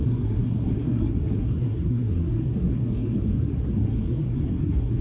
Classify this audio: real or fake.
fake